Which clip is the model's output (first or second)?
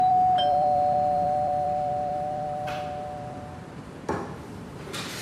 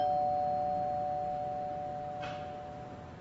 first